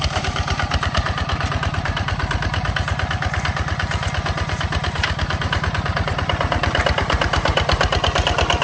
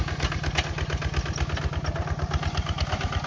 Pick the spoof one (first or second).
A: first